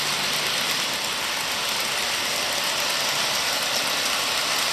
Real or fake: real